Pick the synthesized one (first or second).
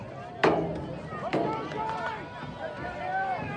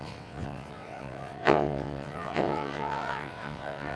second